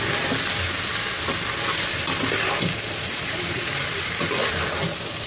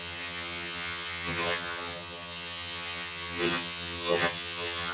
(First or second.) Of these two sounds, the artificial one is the second